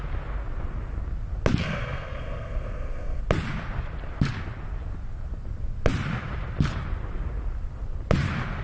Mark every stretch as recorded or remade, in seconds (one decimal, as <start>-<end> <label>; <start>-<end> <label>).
0.0-1.6 recorded; 1.6-3.2 remade; 3.2-8.6 recorded